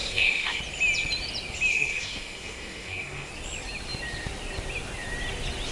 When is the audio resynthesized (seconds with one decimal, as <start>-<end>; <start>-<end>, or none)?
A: 0.0-0.6; 1.7-3.3

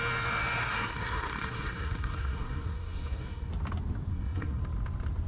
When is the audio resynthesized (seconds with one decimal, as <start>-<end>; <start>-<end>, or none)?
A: 0.6-3.5; 4.1-4.6

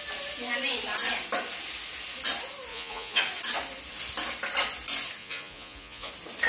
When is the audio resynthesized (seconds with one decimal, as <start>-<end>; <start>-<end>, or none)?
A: 2.7-3.2; 5.2-6.1

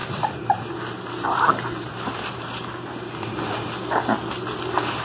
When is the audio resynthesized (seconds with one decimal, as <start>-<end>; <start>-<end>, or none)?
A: 0.0-3.0

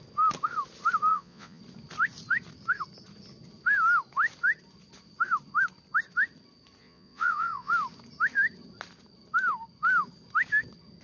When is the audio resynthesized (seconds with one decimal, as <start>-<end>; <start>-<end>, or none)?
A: 1.1-1.6; 6.8-7.7

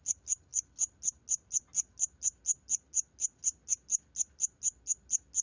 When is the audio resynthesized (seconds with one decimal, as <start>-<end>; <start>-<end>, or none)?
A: none